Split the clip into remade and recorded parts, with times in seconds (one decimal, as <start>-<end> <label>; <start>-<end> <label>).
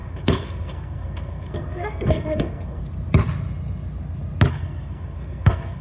0.0-2.8 remade; 2.8-4.5 recorded; 4.5-5.8 remade